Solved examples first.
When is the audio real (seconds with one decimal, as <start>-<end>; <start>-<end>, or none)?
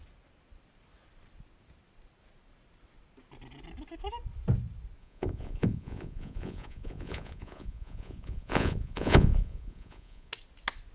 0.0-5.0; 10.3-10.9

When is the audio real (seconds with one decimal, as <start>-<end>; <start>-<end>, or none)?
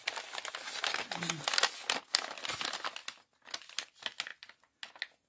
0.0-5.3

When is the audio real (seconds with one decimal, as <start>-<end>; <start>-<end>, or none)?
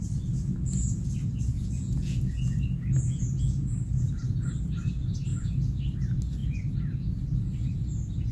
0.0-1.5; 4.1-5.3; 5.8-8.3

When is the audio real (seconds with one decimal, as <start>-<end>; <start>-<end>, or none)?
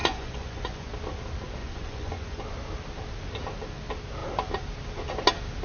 0.9-1.6; 2.4-5.6